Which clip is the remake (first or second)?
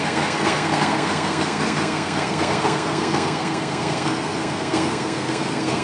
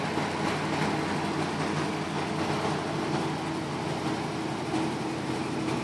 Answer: first